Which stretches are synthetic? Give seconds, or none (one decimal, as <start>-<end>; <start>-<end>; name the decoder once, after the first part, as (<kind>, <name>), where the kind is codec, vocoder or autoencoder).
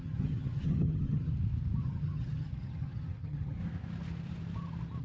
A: 0.0-1.3 (vocoder, HiFi-GAN); 1.8-3.6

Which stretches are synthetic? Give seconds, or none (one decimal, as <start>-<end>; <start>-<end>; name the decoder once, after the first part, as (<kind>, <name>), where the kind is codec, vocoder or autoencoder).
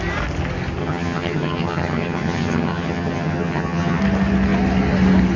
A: 0.8-4.0 (vocoder, HiFi-GAN)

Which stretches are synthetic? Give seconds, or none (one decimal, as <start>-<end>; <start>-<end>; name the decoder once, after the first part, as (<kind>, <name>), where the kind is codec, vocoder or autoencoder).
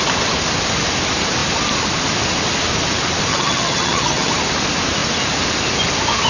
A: 3.3-4.3 (vocoder, HiFi-GAN)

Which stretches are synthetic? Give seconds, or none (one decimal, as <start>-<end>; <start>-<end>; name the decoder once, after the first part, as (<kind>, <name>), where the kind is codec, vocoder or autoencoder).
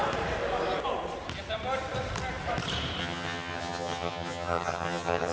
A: 3.0-5.3 (vocoder, HiFi-GAN)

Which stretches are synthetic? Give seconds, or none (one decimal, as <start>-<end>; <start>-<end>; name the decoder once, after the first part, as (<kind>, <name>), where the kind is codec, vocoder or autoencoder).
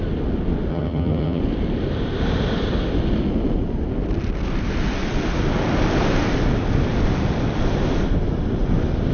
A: 0.7-1.4 (vocoder, HiFi-GAN)